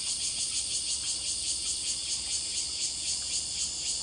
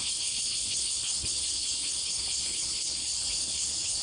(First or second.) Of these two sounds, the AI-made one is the second